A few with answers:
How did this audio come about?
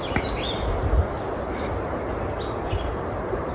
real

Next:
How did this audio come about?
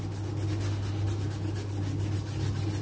real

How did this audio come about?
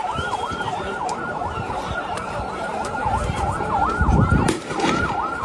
fake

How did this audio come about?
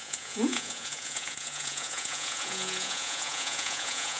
fake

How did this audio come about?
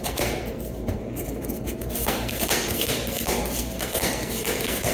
fake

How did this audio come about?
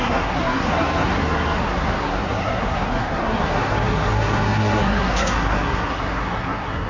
fake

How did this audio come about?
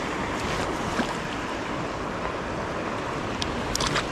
real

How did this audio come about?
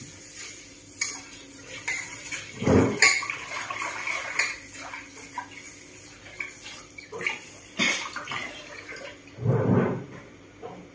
real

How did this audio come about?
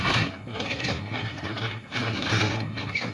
fake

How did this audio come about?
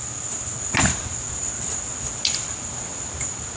real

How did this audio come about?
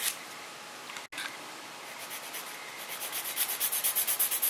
real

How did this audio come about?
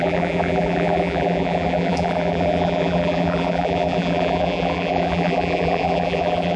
fake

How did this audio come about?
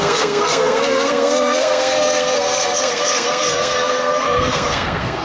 fake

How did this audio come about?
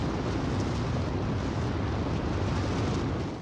real